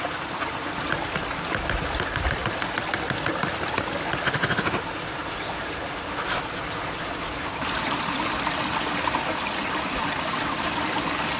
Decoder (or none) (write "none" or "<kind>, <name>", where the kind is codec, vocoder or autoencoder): none